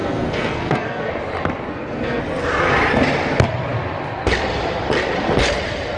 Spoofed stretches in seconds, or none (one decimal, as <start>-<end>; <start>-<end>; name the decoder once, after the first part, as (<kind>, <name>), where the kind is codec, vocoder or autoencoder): 0.0-1.1 (codec, SNAC); 1.7-2.2